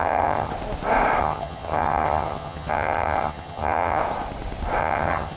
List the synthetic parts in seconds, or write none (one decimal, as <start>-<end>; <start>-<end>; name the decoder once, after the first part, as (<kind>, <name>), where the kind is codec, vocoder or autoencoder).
0.0-0.5 (vocoder, HiFi-GAN); 1.2-4.0; 4.8-5.4